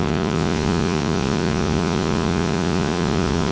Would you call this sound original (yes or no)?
no